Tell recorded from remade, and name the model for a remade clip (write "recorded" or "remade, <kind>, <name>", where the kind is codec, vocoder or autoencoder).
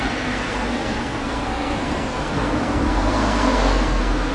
remade, codec, SNAC